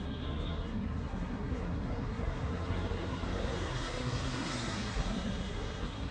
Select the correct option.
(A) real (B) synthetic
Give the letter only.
B